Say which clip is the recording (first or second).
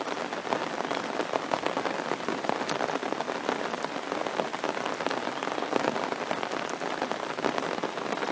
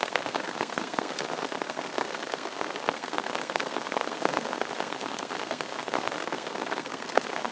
first